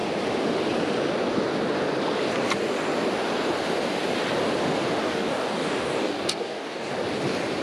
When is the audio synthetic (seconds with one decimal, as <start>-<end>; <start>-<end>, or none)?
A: 5.0-6.9